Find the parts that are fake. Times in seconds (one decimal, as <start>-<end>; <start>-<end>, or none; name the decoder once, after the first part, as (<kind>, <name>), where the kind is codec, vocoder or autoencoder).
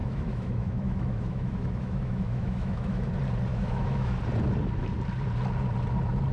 0.0-3.1 (autoencoder, DAC-VAE); 3.5-4.2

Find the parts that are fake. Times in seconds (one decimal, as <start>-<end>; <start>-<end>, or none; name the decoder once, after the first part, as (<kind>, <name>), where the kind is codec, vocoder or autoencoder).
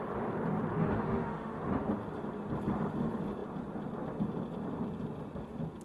0.7-1.6 (autoencoder, DAC-VAE)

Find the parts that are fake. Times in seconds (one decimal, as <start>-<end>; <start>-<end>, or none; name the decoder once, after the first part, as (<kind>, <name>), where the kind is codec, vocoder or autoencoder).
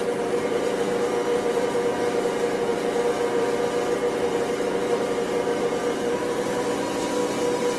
0.0-7.8 (vocoder, BigVGAN v2)